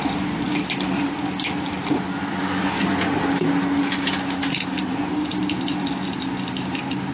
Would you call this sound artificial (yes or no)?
no